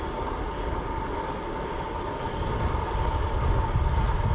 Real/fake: real